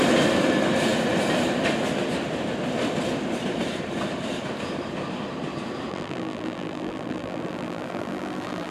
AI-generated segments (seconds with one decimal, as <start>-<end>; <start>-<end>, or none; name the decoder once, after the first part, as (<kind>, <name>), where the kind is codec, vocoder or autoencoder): 5.9-8.7 (vocoder, BigVGAN v2)